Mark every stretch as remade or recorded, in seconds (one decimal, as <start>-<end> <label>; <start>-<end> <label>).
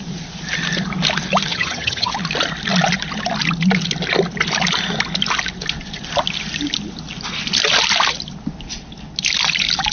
0.0-1.5 recorded; 1.5-2.1 remade; 2.1-9.9 recorded